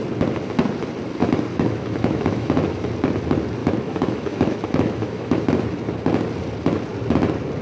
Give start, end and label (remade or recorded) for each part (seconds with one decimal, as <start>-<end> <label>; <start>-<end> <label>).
0.0-1.5 recorded; 1.5-2.8 remade; 2.8-3.6 recorded; 3.6-5.4 remade; 5.4-7.6 recorded